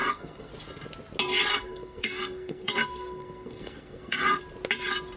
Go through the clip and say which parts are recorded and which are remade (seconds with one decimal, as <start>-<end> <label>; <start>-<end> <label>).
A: 0.0-0.5 remade; 0.5-1.5 recorded; 1.5-4.4 remade; 4.4-5.2 recorded